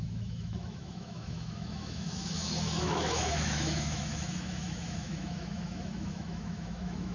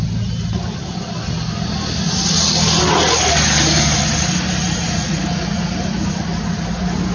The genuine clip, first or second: second